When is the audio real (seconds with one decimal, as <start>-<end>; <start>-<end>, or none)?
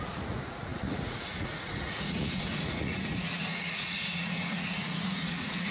none